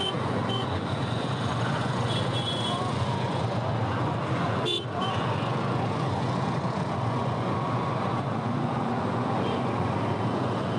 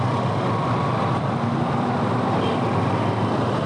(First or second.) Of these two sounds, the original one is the second